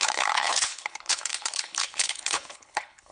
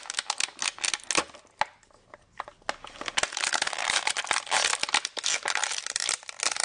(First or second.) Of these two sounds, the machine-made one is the first